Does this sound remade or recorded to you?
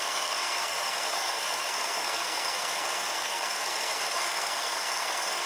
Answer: remade